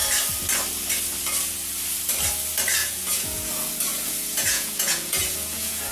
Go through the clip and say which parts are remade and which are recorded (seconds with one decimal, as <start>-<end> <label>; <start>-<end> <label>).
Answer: 0.0-2.8 recorded; 2.8-3.5 remade; 3.5-3.9 recorded; 3.9-5.9 remade